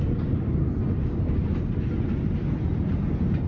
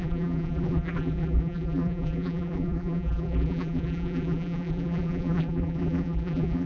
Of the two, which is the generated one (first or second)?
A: second